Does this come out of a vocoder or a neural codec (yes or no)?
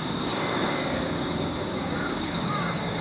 yes